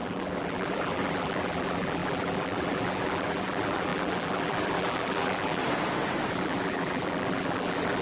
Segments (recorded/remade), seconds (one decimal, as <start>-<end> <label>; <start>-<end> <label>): 0.0-5.6 remade; 5.6-6.3 recorded; 6.3-8.0 remade